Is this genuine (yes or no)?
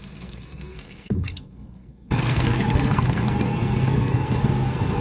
no